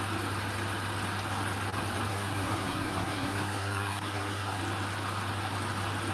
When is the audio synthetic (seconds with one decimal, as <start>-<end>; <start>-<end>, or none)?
2.1-4.6